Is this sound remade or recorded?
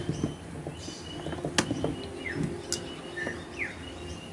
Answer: recorded